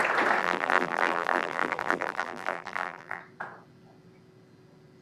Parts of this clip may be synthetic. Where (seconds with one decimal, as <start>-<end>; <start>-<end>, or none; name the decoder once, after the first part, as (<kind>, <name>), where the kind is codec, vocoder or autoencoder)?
0.4-3.2 (vocoder, BigVGAN v2)